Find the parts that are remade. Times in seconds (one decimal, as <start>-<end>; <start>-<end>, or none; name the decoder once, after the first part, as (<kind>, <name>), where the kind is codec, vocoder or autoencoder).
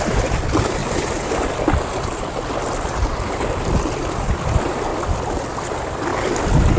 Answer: 0.0-0.8 (vocoder, BigVGAN v2); 4.3-4.9; 5.4-6.1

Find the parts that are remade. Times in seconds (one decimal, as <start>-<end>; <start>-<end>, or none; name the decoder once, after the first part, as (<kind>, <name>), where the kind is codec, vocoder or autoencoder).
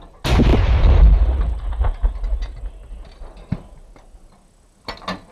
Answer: 0.5-1.1 (vocoder, BigVGAN v2)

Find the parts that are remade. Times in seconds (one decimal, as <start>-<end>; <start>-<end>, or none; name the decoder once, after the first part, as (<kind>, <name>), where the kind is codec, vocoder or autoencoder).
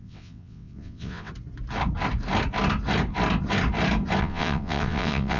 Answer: 0.0-1.3 (vocoder, WaveNeXt); 4.2-5.4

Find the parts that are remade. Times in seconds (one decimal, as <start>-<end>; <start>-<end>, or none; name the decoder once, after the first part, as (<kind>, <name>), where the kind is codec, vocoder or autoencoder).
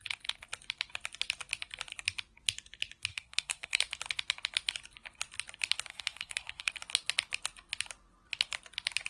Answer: 3.1-3.8 (codec, SNAC); 5.9-6.7